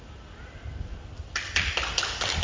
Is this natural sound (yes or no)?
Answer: yes